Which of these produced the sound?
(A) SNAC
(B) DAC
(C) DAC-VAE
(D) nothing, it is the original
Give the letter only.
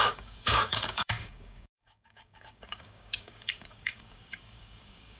B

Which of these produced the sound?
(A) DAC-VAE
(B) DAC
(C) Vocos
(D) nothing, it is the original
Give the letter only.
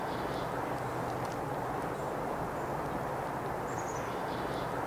D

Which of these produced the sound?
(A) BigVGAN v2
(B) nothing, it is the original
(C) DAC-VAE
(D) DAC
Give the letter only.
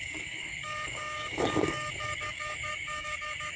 D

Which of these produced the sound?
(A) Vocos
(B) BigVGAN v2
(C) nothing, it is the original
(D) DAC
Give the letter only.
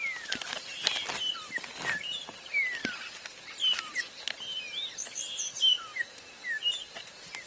C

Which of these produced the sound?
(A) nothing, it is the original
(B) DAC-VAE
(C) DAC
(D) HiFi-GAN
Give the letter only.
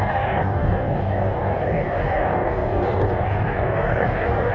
C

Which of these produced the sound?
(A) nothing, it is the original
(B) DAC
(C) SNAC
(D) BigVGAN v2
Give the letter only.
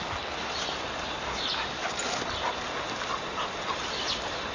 A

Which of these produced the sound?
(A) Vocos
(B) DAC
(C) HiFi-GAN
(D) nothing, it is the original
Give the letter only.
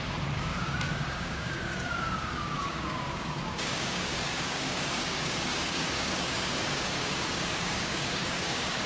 B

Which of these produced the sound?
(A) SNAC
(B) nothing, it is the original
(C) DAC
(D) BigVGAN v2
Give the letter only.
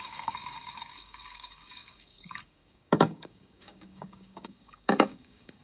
C